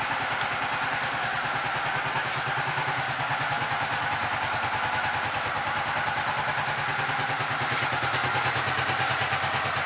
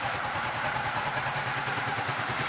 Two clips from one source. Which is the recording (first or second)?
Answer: first